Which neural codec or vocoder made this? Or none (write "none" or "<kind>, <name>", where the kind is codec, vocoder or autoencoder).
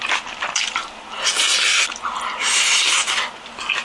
none